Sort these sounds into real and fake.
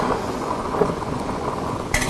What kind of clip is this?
fake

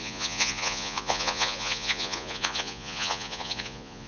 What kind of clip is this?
fake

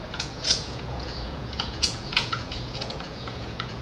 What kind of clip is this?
fake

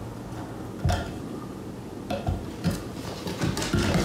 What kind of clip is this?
real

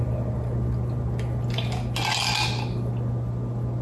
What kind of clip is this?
real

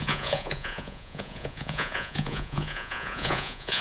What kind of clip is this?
fake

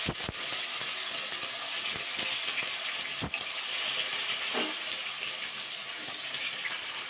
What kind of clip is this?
real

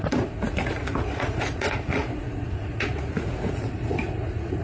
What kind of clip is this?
fake